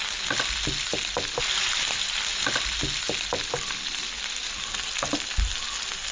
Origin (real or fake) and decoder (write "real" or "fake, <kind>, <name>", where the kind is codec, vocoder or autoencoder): real